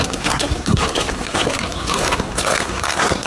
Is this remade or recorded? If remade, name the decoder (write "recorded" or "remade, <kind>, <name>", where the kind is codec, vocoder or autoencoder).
remade, codec, SNAC